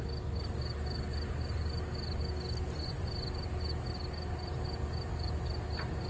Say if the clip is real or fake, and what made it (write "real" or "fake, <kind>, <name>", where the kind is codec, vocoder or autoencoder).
real